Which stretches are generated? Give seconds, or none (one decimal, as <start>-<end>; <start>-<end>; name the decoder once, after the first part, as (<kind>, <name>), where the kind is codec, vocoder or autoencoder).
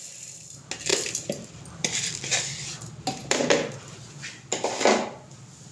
0.9-2.8 (vocoder, BigVGAN v2); 3.2-4.5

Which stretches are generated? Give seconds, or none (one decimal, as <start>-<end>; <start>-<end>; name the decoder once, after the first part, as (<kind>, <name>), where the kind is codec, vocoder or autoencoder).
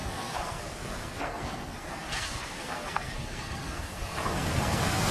0.0-5.1 (codec, SNAC)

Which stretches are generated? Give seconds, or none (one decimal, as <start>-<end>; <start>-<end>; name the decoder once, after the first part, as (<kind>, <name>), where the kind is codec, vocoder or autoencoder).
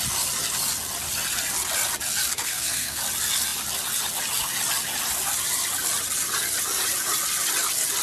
2.3-3.0 (codec, SNAC)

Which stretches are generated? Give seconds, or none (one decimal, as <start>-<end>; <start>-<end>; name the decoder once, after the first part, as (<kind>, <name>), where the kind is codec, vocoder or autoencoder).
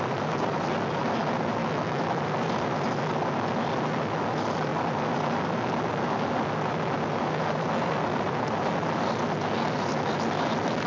1.6-2.2 (autoencoder, DAC-VAE)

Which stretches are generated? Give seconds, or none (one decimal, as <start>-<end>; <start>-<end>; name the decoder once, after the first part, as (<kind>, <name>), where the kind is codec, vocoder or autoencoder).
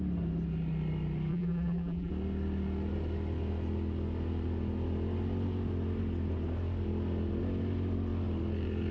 1.3-2.1 (vocoder, BigVGAN v2)